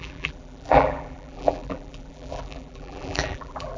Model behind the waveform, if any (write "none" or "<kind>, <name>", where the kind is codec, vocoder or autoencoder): vocoder, BigVGAN v2